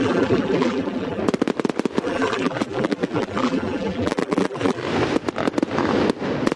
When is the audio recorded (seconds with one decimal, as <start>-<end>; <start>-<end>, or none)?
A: 1.2-2.0; 4.8-6.6